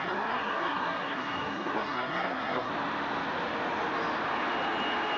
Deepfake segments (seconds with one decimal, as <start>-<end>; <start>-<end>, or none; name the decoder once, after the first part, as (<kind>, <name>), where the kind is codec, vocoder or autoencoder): 0.0-2.7 (codec, SNAC)

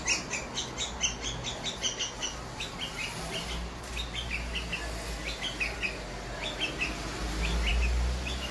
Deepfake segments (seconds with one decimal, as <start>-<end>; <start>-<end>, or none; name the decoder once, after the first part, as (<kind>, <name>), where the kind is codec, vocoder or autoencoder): none